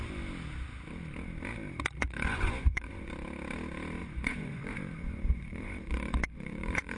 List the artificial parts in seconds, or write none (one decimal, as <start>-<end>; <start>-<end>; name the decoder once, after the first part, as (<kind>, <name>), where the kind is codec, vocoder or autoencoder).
2.0-3.1 (vocoder, Vocos); 4.0-7.0